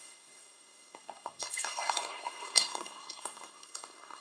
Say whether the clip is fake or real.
fake